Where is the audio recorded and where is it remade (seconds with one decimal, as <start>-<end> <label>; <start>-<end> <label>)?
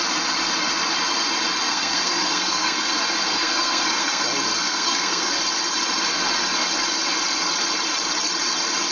0.0-1.7 recorded; 1.7-2.9 remade; 2.9-3.3 recorded; 3.3-4.2 remade; 4.2-4.7 recorded; 4.7-5.3 remade; 5.3-8.9 recorded